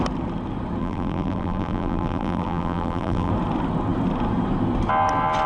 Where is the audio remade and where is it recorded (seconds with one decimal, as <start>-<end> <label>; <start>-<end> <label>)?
0.0-0.8 recorded; 0.8-3.3 remade; 3.3-5.5 recorded